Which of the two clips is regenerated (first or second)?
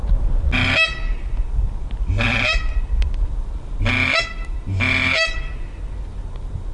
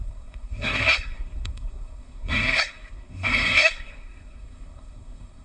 second